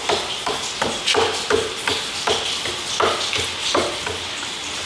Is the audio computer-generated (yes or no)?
no